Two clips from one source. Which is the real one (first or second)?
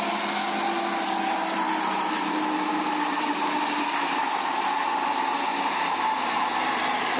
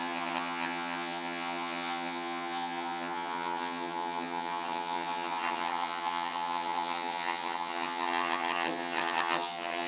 first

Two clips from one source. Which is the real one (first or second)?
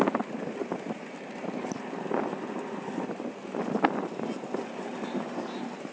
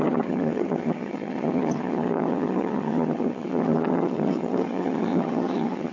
first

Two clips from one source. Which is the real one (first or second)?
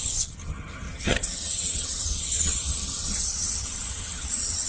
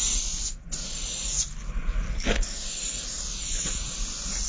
second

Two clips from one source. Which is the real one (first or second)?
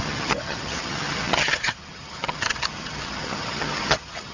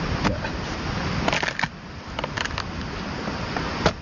second